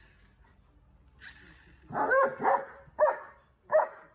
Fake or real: real